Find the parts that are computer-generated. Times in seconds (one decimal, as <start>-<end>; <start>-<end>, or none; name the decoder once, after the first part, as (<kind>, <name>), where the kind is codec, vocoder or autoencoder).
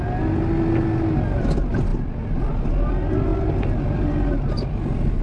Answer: none